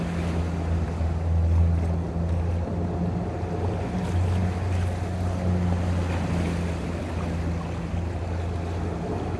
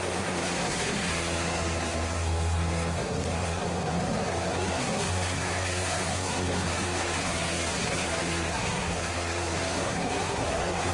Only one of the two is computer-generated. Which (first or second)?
second